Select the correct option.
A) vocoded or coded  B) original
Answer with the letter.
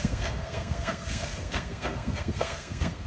A